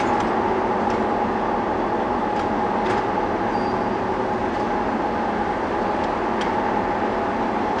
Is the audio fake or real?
real